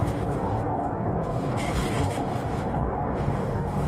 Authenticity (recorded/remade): remade